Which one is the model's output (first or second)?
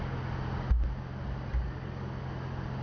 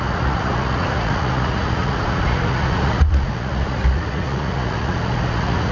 second